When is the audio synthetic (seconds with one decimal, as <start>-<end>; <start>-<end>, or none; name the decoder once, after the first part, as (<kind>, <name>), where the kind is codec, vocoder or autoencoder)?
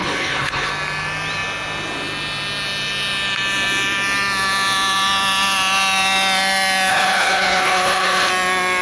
0.0-0.7 (codec, HILCodec); 6.9-8.3